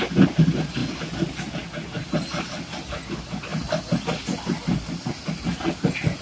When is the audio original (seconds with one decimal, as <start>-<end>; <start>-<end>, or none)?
0.0-6.2